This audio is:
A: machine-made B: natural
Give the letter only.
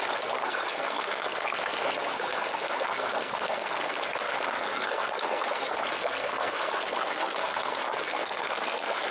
A